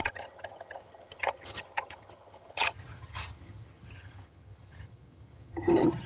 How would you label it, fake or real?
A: fake